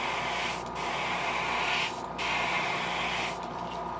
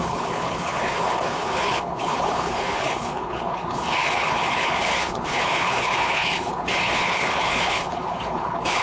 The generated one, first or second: second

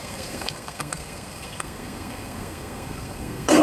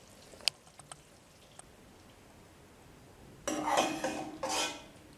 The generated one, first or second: first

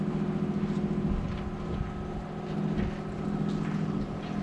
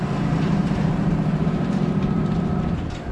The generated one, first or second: second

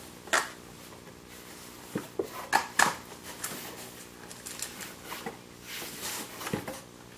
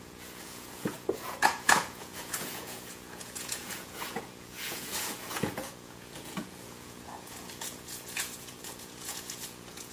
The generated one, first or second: second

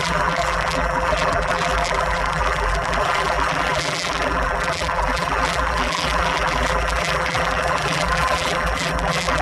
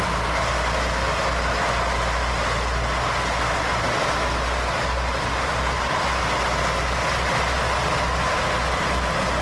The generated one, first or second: first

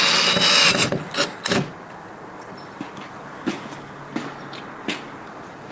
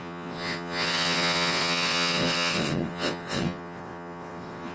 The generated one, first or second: second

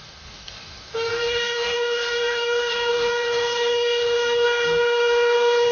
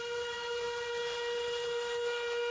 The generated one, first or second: first